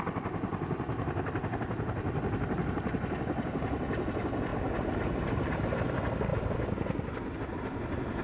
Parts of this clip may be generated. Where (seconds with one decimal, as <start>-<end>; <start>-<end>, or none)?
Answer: 6.3-7.6